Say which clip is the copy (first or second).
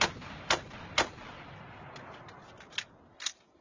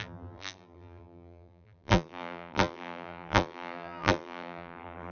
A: second